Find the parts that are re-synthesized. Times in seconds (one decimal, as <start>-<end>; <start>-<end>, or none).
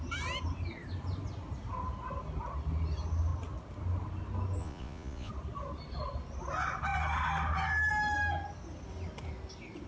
4.6-5.3